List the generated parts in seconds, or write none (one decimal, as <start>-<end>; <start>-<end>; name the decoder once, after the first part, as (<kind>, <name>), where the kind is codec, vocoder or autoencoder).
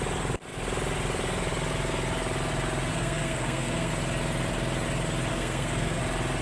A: 2.9-3.9 (codec, SNAC); 5.3-6.0